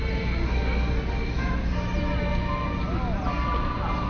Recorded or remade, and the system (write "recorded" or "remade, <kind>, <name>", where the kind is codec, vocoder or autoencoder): recorded